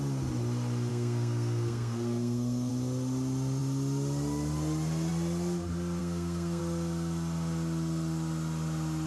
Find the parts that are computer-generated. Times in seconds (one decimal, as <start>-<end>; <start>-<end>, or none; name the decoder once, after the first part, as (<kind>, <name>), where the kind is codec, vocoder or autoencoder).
0.9-2.7 (codec, SNAC); 6.0-6.6